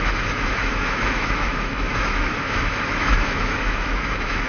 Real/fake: fake